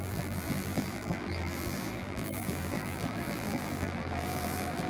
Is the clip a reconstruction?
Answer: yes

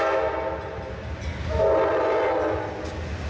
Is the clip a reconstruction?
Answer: no